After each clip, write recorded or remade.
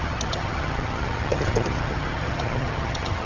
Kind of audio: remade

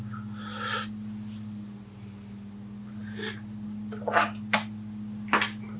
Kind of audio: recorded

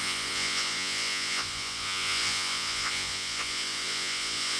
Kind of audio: remade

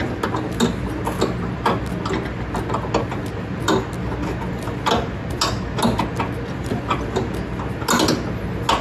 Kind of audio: recorded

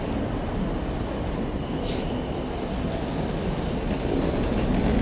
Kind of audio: recorded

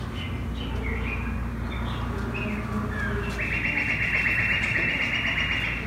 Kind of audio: recorded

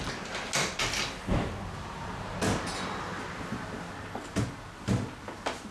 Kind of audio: recorded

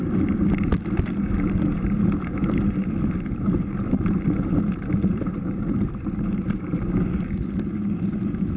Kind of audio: recorded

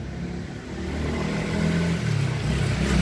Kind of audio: recorded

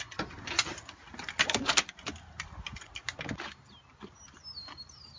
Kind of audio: recorded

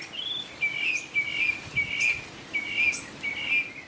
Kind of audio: recorded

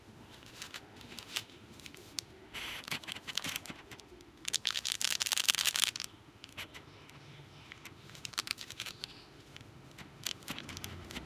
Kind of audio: remade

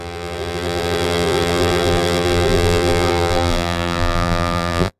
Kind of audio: remade